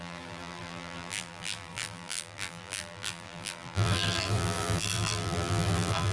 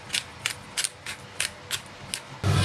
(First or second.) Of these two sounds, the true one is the second